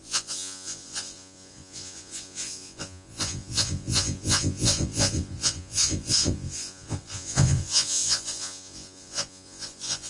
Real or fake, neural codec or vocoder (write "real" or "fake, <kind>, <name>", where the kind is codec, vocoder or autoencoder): fake, vocoder, Vocos